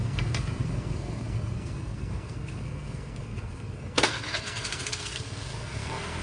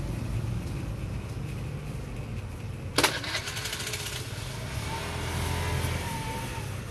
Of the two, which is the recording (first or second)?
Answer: second